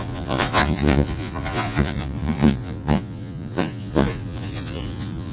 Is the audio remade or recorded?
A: remade